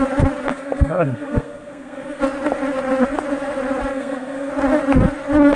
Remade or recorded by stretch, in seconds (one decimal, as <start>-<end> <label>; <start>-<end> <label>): 0.0-0.5 recorded; 0.5-2.2 remade; 2.2-3.9 recorded; 3.9-4.5 remade; 4.5-5.6 recorded